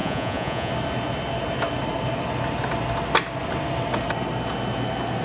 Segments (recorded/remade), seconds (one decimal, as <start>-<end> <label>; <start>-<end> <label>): 0.0-0.7 remade; 0.7-5.2 recorded